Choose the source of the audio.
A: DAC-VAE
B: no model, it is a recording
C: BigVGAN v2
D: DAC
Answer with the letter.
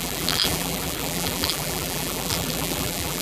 C